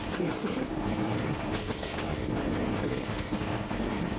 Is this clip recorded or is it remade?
remade